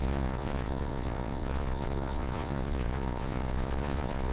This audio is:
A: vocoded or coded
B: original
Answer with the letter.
A